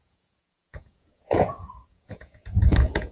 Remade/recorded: remade